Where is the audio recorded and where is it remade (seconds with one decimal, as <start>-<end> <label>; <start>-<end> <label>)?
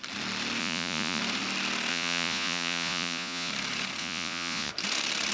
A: 0.0-0.6 recorded; 0.6-1.2 remade; 1.2-1.9 recorded; 1.9-3.5 remade; 3.5-4.0 recorded; 4.0-4.7 remade; 4.7-5.3 recorded